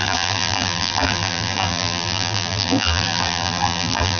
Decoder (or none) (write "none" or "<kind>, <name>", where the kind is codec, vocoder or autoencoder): vocoder, BigVGAN v2